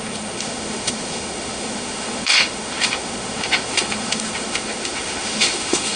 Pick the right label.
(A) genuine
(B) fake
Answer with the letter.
B